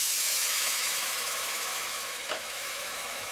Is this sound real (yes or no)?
no